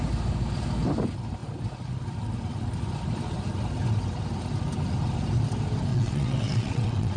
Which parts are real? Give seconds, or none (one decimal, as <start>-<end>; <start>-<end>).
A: 0.0-5.9